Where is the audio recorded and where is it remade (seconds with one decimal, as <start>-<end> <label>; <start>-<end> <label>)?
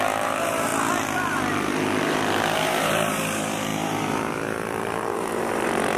0.0-0.7 remade; 0.7-2.0 recorded; 2.0-6.0 remade